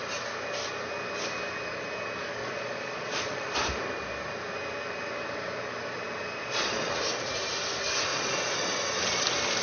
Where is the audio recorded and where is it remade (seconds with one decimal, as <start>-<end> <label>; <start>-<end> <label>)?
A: 0.0-2.4 recorded; 2.4-3.5 remade; 3.5-6.4 recorded; 6.4-6.9 remade; 6.9-8.1 recorded; 8.1-8.9 remade; 8.9-9.6 recorded